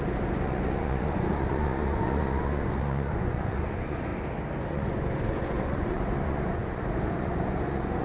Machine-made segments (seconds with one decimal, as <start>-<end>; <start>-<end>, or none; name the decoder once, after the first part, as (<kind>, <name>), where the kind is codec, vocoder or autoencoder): 0.0-4.1 (vocoder, Vocos); 4.7-8.0